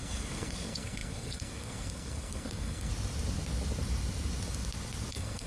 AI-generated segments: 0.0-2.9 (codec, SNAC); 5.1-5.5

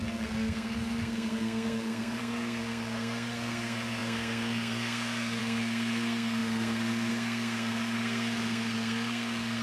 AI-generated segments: 0.0-9.6 (codec, SNAC)